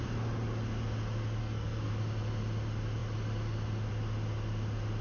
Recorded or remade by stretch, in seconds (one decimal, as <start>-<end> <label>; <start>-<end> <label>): 0.0-1.4 recorded; 1.4-1.9 remade; 1.9-5.0 recorded